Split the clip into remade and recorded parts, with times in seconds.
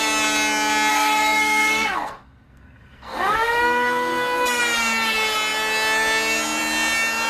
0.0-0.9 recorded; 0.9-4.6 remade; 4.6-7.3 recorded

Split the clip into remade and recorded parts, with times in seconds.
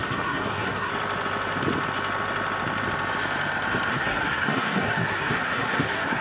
0.0-0.9 remade; 0.9-3.9 recorded; 3.9-6.2 remade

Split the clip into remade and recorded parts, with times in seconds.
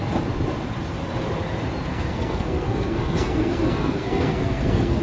0.0-1.9 recorded; 1.9-5.0 remade